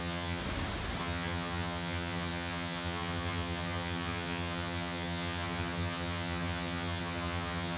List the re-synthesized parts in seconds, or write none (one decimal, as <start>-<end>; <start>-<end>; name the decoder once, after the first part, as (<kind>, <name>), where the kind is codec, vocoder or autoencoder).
0.0-0.4 (vocoder, HiFi-GAN); 1.0-7.8

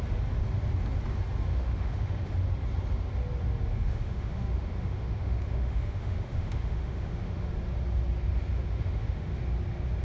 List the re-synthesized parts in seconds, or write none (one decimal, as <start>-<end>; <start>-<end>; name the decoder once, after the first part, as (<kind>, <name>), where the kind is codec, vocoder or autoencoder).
1.5-2.3 (autoencoder, DAC-VAE); 3.7-7.5; 8.5-9.4

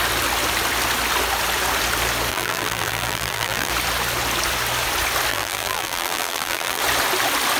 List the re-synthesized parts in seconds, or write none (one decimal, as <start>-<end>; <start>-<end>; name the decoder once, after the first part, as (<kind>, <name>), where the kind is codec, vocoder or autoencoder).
2.3-3.7 (vocoder, BigVGAN v2); 5.3-6.8

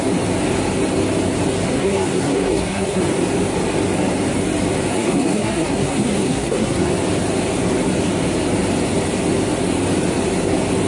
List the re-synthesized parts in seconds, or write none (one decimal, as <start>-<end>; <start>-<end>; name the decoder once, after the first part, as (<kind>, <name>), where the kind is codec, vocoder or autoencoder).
1.7-3.0 (codec, SNAC); 4.9-6.9